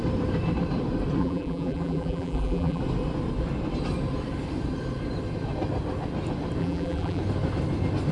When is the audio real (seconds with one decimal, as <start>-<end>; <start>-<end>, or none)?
0.0-1.2; 2.8-6.6; 7.2-8.1